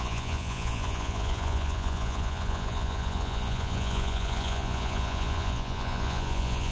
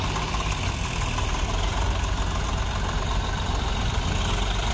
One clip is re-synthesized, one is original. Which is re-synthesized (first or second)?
first